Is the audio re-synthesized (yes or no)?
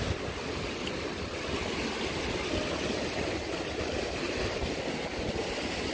no